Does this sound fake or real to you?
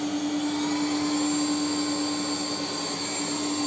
real